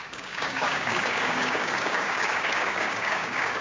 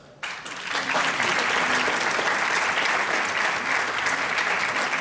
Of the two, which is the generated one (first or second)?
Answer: first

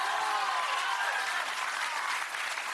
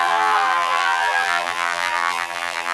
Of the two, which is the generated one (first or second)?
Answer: second